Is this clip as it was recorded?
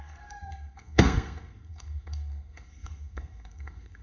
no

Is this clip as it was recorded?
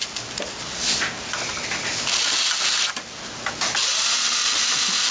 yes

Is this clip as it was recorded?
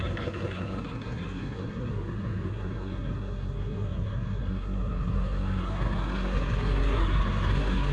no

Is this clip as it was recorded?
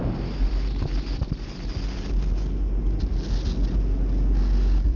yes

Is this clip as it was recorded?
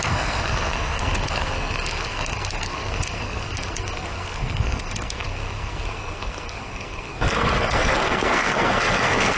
no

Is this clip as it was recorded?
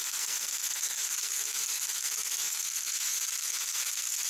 no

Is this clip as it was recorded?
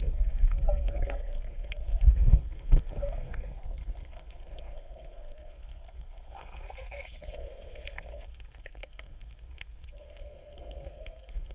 no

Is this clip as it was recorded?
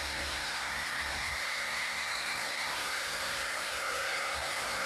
no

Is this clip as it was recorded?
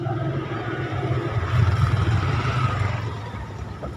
yes